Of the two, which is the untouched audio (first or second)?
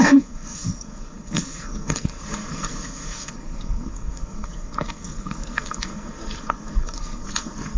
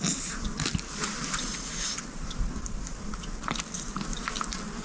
second